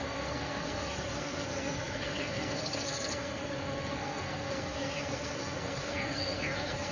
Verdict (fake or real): fake